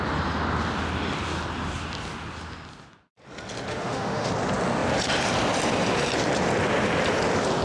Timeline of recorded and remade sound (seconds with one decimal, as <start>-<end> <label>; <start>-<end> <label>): 0.0-3.7 recorded; 3.7-4.3 remade; 4.3-7.6 recorded